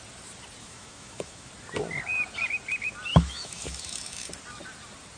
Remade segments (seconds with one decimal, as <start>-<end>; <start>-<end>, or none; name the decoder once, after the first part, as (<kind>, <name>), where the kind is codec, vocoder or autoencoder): 0.6-1.5 (autoencoder, DAC-VAE); 3.1-4.3